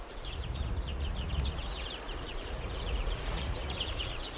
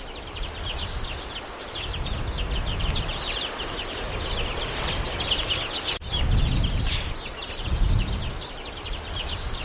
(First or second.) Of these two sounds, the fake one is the first